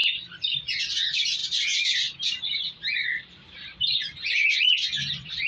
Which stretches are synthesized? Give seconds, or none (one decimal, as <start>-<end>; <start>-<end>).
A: 0.0-0.8; 1.4-4.7